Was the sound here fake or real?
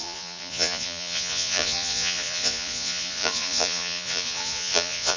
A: fake